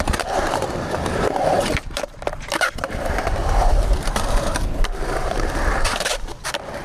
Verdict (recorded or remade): remade